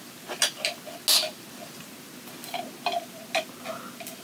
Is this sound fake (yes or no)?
no